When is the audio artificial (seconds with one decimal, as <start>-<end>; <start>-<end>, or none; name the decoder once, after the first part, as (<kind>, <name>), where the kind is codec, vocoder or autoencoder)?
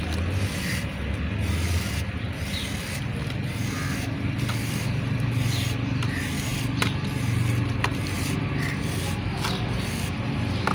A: none